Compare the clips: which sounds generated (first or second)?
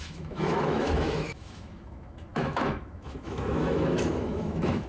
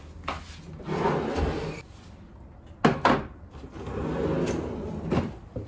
first